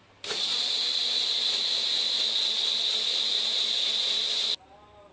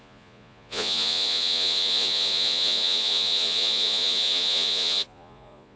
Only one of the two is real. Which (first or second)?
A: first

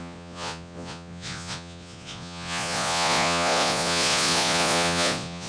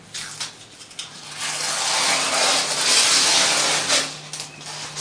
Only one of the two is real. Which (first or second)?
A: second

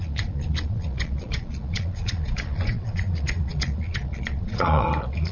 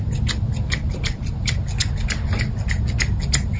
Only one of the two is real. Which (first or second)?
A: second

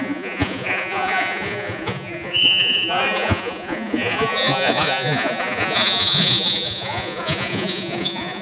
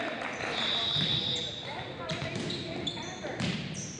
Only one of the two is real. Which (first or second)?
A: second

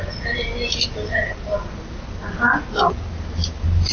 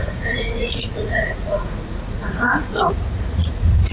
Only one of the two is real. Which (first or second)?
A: first